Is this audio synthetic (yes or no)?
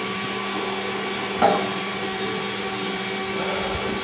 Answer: no